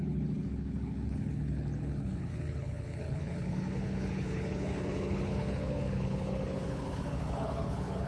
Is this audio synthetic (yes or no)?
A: yes